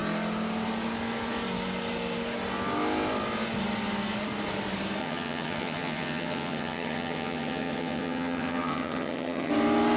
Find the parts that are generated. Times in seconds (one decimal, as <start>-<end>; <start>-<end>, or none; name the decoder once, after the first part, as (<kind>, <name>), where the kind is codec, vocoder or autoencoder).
5.0-9.5 (vocoder, HiFi-GAN)

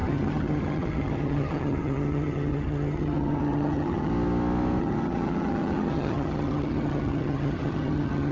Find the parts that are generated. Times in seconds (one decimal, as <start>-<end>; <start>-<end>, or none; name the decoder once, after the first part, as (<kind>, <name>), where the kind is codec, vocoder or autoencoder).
0.0-4.1 (vocoder, HiFi-GAN); 4.8-8.3

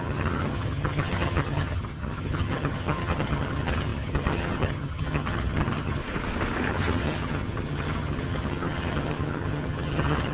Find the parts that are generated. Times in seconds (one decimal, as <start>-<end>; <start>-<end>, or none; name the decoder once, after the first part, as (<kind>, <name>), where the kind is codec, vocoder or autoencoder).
0.0-6.0 (vocoder, HiFi-GAN); 6.7-10.3

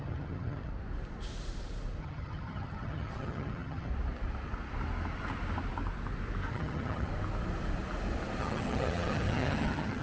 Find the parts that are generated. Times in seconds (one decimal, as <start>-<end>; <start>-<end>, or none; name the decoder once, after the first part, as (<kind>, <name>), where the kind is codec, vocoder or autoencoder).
0.0-0.7 (vocoder, HiFi-GAN); 2.0-3.9; 6.5-7.1; 8.4-10.0

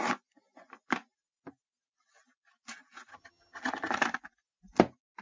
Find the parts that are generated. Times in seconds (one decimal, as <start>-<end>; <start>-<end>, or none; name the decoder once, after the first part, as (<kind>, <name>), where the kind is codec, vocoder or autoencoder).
3.1-3.9 (vocoder, HiFi-GAN)

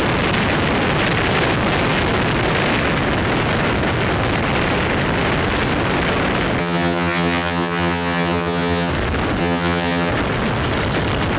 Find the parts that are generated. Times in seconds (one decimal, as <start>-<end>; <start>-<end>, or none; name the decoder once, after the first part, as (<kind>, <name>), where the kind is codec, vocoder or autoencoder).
6.6-8.9 (vocoder, HiFi-GAN); 9.4-10.1